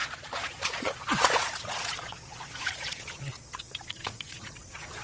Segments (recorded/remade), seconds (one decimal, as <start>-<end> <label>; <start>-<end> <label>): 0.0-5.0 remade